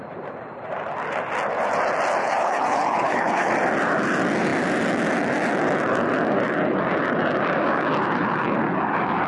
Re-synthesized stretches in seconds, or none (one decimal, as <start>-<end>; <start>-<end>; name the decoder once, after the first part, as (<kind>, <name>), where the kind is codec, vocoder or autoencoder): 2.2-3.5 (codec, HILCodec)